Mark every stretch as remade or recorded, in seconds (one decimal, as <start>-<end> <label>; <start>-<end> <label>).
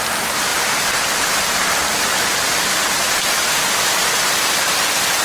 0.0-5.2 recorded